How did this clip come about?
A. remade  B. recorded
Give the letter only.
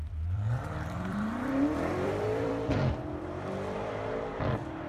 A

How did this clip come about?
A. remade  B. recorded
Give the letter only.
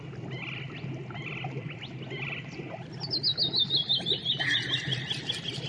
B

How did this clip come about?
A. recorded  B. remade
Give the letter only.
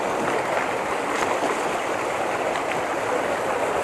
A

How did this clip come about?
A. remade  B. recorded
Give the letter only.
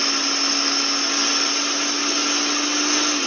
B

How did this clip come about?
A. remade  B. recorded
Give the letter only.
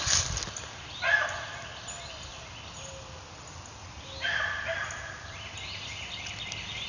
B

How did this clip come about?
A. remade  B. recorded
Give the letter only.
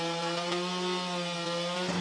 B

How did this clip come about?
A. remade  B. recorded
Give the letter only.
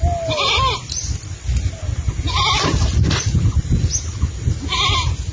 B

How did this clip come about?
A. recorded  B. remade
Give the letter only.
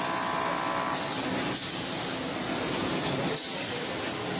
A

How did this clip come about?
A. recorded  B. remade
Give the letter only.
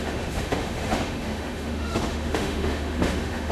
B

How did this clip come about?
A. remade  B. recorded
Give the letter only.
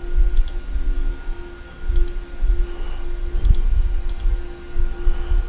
B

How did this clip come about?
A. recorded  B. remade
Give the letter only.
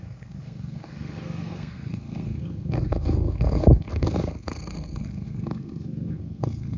B